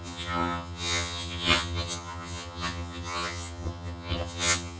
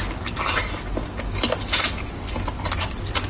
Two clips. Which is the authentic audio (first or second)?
second